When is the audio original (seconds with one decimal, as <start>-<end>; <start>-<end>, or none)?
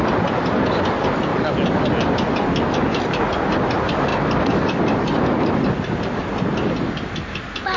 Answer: 0.0-7.8